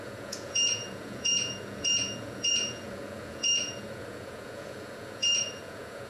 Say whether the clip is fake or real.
fake